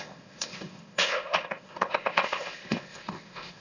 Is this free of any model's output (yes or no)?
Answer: no